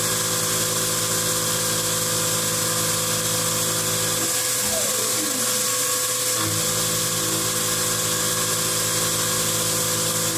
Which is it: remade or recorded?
recorded